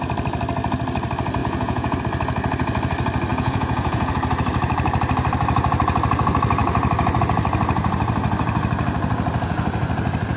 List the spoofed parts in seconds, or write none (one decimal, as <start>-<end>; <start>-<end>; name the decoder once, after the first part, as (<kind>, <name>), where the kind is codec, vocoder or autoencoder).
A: 1.4-2.0 (vocoder, Vocos); 3.3-4.1